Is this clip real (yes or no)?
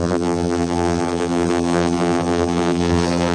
no